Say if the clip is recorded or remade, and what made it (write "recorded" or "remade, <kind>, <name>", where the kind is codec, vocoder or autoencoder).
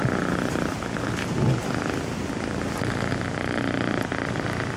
recorded